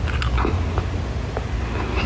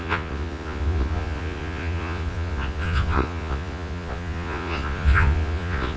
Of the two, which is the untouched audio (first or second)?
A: first